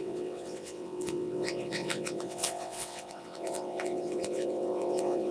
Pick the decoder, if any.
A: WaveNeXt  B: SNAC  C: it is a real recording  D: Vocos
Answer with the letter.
A